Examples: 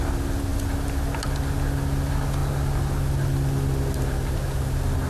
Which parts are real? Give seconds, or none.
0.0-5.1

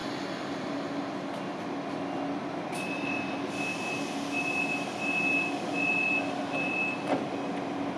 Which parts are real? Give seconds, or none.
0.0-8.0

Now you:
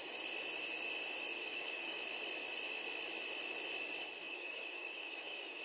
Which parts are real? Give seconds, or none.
0.0-1.4; 2.0-4.2